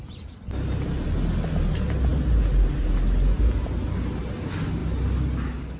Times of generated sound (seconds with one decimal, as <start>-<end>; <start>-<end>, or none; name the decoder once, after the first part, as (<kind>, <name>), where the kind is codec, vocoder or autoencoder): none